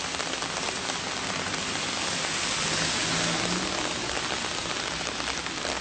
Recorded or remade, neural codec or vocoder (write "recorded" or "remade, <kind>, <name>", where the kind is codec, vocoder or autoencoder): recorded